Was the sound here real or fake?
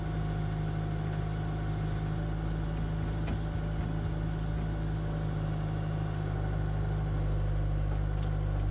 real